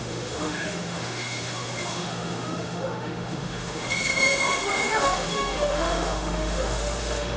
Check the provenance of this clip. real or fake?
fake